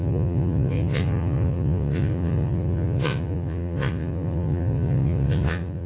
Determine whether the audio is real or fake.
fake